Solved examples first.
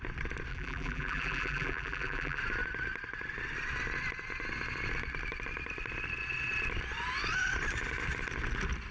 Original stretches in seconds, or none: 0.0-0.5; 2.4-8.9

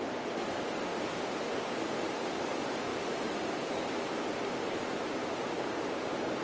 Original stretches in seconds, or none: 0.0-6.4

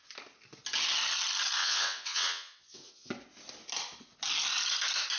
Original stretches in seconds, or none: 0.0-1.6; 3.1-5.2

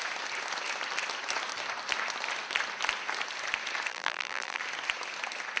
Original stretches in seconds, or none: 0.0-3.9; 4.6-5.6

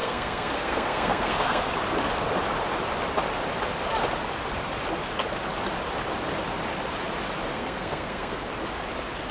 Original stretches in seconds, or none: 1.7-7.5; 8.5-9.3